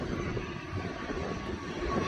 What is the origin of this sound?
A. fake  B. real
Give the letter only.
B